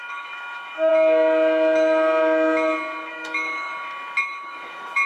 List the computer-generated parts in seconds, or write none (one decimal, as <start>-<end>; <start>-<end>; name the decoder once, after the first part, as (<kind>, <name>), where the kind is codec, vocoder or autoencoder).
0.0-0.9 (autoencoder, DAC-VAE); 3.1-3.7; 4.2-5.1